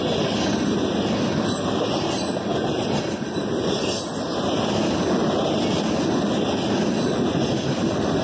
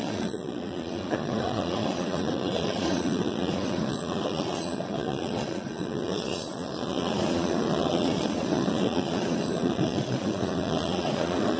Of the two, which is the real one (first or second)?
first